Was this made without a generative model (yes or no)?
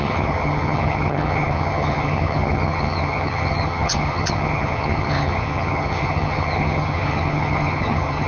no